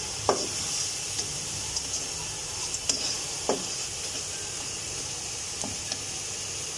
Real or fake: real